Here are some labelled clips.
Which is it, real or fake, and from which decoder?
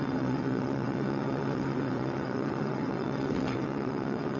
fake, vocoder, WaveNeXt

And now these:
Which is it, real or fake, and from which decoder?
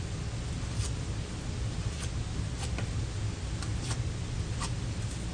real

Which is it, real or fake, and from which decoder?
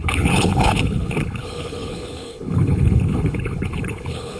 fake, codec, HILCodec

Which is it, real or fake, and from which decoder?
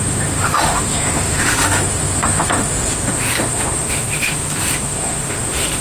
fake, autoencoder, DAC-VAE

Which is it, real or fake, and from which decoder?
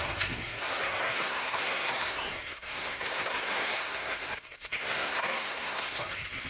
fake, codec, SNAC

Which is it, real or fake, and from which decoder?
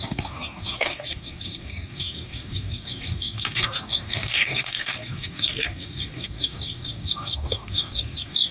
fake, codec, DAC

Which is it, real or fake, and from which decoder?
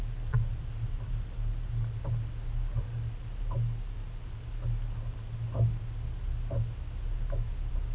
real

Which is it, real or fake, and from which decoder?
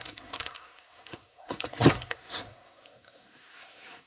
fake, codec, SNAC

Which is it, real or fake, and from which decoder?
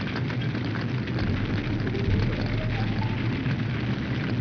real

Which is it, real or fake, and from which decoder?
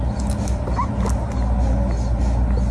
real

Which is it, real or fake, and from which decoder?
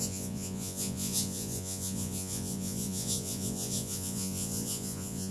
fake, vocoder, Vocos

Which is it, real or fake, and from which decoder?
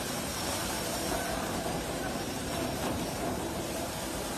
fake, vocoder, BigVGAN v2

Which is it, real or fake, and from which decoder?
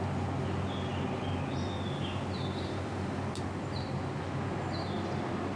real